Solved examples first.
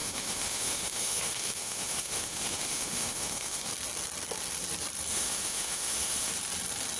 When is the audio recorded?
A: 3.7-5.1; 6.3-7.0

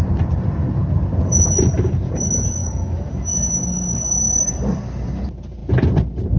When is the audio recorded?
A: 0.0-2.6; 3.1-6.4

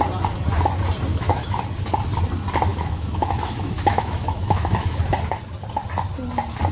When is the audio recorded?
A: 0.0-1.1; 1.6-2.7; 5.0-6.7